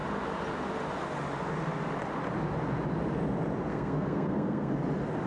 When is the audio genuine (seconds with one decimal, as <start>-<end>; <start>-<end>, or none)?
0.0-3.7; 4.7-5.3